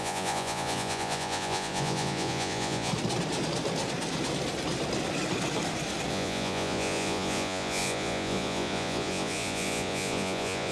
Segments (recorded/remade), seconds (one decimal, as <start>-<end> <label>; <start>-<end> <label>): 0.0-2.9 remade; 2.9-6.1 recorded; 6.1-10.7 remade